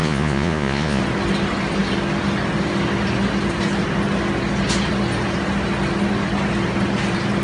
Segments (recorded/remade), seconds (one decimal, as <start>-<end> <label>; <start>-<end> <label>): 0.0-1.0 remade; 1.0-7.4 recorded